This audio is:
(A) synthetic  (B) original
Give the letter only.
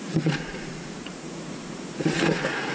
A